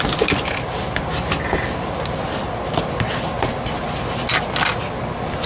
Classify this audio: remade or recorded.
recorded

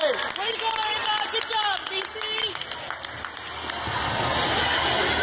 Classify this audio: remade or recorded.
recorded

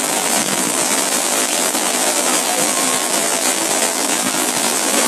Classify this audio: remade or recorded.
remade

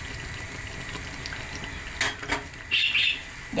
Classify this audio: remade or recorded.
recorded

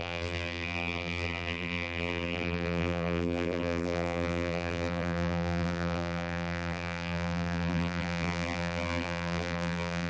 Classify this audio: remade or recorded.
remade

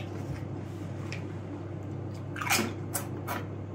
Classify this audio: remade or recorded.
recorded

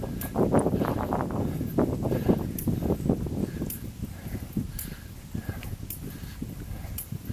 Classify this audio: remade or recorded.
recorded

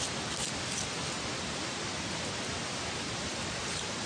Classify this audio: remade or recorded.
recorded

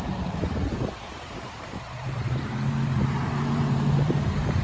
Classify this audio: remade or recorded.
remade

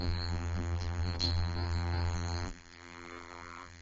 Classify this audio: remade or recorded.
remade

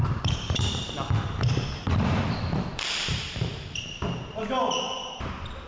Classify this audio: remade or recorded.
remade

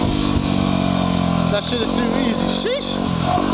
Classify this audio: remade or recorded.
recorded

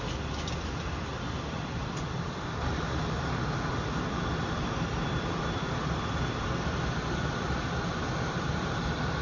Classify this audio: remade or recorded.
remade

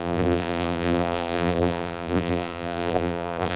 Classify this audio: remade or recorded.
remade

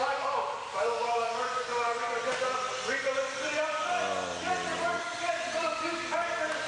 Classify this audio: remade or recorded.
remade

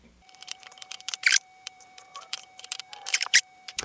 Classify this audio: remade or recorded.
remade